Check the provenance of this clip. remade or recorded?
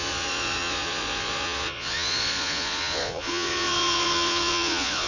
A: remade